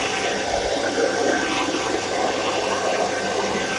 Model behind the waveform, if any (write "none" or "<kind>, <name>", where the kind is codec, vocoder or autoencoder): none